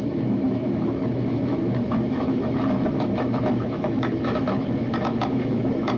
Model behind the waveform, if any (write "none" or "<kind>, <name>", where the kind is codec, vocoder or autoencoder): autoencoder, DAC-VAE